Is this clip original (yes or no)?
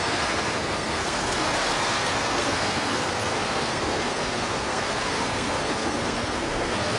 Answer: no